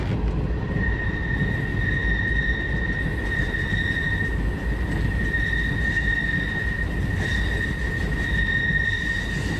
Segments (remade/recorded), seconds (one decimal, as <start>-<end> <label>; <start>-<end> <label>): 0.0-9.6 recorded